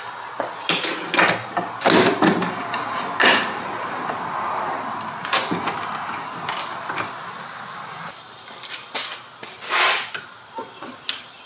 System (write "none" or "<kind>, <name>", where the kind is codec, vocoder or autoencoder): none